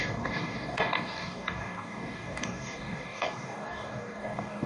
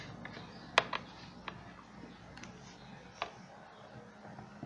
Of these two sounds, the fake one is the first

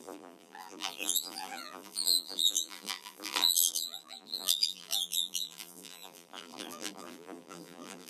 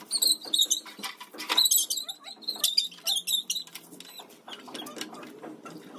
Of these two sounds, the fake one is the first